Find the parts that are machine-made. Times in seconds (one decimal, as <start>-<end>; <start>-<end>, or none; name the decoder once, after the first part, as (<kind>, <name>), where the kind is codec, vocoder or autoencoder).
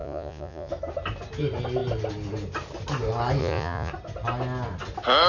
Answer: 0.0-0.7 (vocoder, Vocos); 3.4-3.9